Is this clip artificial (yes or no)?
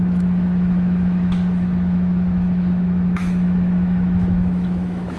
yes